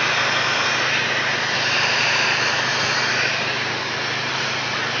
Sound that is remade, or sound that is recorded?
remade